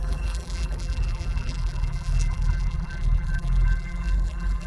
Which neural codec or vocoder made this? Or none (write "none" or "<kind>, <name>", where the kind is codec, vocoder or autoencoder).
vocoder, BigVGAN v2